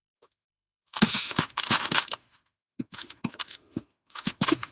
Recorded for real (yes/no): no